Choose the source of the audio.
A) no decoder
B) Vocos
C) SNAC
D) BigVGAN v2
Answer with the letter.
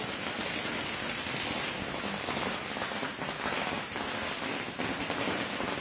A